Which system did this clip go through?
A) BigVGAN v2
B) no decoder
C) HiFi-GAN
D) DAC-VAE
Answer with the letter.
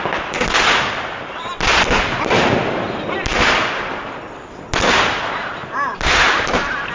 B